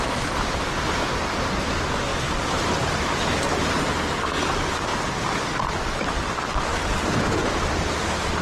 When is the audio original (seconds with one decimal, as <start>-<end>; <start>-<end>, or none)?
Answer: 0.0-2.1; 4.3-4.9; 6.3-8.4